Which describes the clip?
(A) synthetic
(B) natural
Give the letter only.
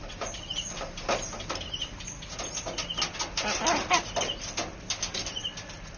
B